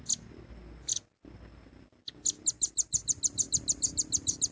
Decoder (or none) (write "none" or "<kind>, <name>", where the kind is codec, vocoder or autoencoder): none